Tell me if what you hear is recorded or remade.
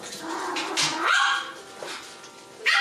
recorded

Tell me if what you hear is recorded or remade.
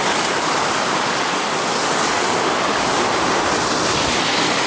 recorded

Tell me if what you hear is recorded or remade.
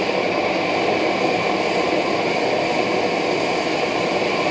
recorded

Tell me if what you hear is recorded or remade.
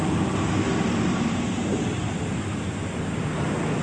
recorded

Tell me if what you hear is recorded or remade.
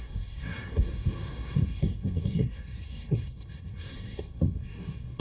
remade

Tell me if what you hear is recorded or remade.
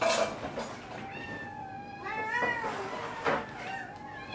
recorded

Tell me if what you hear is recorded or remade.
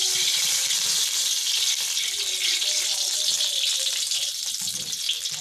recorded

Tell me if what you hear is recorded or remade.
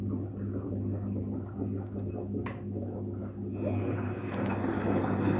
recorded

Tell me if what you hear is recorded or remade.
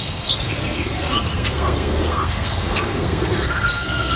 remade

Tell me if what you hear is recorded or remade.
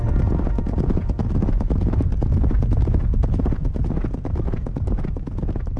recorded